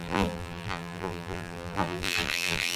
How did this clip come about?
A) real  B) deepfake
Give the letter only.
B